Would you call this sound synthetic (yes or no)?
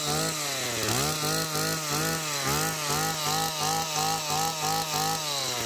no